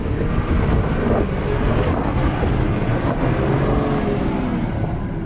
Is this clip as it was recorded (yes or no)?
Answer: yes